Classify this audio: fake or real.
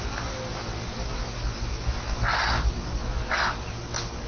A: real